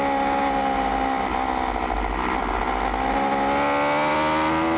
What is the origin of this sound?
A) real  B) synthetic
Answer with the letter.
A